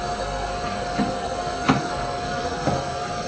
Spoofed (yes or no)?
yes